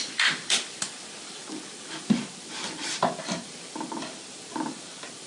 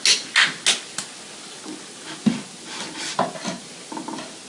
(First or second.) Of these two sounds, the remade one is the first